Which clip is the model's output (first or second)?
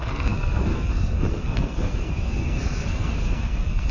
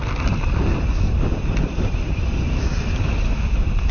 first